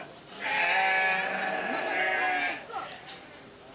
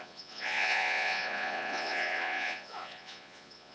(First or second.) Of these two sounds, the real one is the first